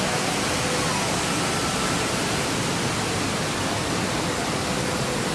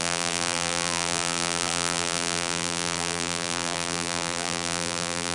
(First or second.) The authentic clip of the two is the first